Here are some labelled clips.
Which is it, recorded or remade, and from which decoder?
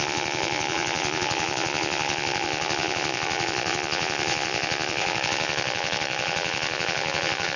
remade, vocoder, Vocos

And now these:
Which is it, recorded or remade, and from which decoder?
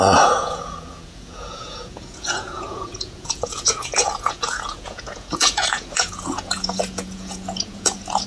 remade, vocoder, Vocos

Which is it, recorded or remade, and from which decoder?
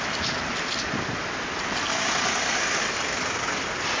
recorded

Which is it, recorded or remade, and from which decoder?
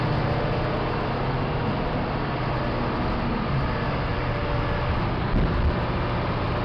recorded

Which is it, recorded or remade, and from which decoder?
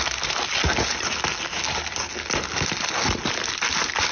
recorded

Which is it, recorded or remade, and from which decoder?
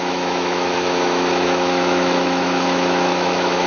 remade, autoencoder, DAC-VAE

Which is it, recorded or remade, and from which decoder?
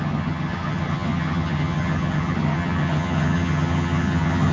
remade, vocoder, HiFi-GAN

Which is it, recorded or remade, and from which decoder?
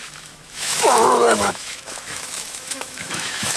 remade, autoencoder, DAC-VAE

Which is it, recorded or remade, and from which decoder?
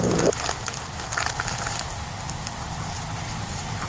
recorded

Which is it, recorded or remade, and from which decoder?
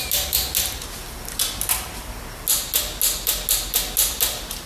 recorded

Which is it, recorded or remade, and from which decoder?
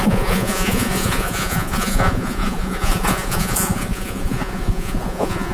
remade, vocoder, Vocos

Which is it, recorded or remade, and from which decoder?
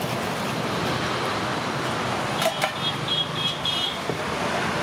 remade, vocoder, BigVGAN v2